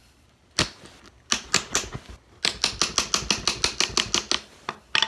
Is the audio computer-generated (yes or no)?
no